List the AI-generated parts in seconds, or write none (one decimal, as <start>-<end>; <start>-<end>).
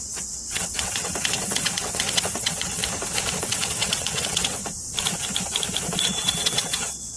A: 0.0-2.8; 3.4-4.6; 6.0-7.2